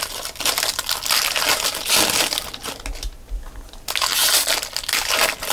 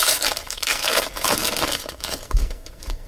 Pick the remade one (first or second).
second